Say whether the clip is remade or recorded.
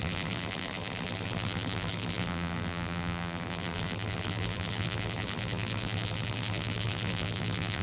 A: remade